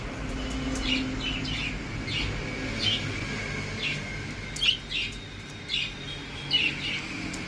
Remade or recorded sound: recorded